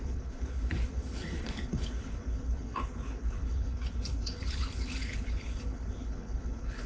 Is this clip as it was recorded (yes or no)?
no